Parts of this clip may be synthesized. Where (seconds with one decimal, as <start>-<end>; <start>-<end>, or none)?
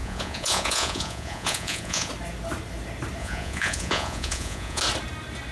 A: 0.0-2.1; 3.2-4.8